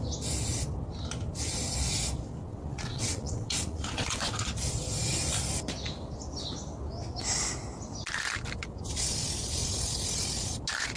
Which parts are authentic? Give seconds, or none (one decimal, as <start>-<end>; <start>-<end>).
0.0-2.5; 4.5-11.0